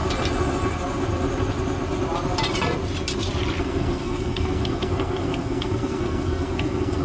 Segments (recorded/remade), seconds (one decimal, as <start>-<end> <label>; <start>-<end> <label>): 0.0-3.6 recorded; 3.6-7.0 remade